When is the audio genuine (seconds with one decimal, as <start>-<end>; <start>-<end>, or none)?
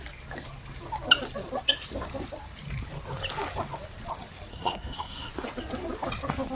0.0-4.5; 5.3-6.5